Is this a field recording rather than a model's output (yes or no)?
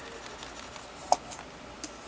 yes